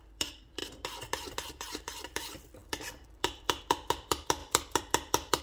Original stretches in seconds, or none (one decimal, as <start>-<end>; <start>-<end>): 0.6-1.5